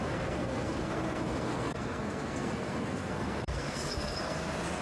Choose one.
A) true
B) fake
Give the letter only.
B